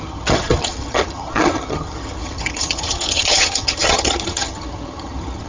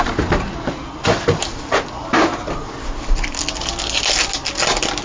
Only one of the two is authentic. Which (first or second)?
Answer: second